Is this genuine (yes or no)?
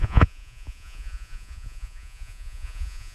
no